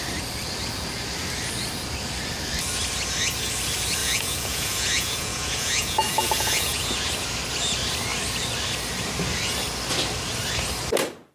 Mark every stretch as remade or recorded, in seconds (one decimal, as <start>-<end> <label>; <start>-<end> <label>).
0.0-4.0 recorded; 4.0-7.1 remade; 7.1-11.3 recorded